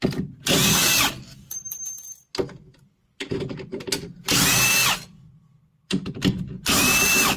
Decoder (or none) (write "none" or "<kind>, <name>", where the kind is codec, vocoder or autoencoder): none